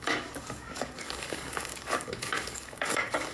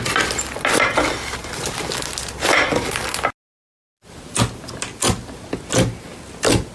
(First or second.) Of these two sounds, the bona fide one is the second